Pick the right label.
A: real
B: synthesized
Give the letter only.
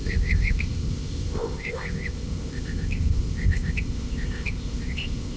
B